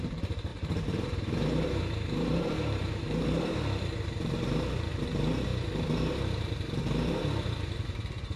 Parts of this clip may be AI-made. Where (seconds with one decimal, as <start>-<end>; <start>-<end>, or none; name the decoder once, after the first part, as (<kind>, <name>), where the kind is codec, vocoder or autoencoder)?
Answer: 0.0-8.4 (vocoder, BigVGAN v2)